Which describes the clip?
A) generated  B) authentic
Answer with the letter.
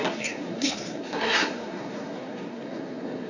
A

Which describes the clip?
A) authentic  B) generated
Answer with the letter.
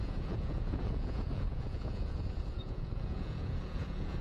B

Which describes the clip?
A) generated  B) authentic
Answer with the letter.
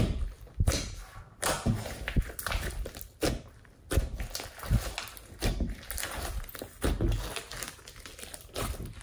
B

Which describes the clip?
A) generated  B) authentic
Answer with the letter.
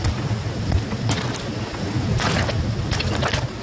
B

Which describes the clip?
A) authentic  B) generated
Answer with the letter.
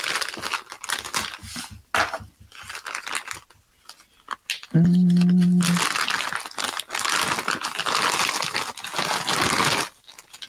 A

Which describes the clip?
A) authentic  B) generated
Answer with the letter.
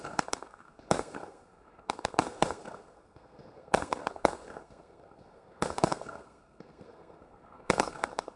B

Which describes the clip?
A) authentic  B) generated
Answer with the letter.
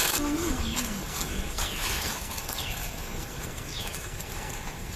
B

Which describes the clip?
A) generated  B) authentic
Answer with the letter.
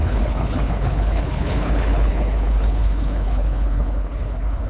A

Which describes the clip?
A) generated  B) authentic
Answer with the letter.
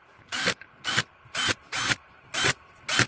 A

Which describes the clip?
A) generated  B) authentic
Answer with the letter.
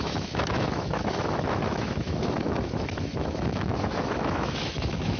A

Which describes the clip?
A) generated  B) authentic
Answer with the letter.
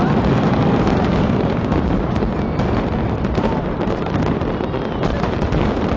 A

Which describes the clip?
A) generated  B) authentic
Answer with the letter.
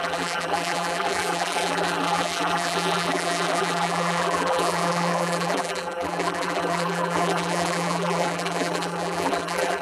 A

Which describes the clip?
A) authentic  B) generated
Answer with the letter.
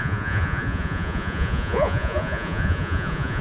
B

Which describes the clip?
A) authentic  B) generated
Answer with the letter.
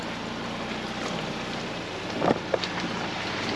A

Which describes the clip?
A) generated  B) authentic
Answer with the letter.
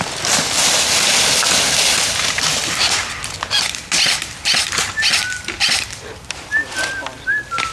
A